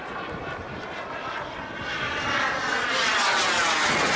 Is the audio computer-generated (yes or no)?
no